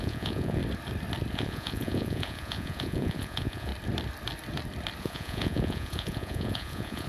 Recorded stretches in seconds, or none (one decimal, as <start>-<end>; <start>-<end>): 0.6-1.3; 3.7-5.0